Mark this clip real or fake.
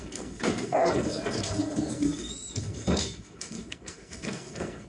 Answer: fake